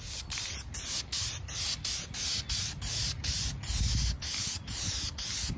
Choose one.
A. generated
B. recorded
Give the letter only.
B